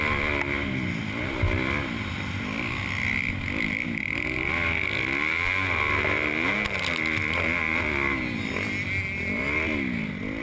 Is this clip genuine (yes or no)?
yes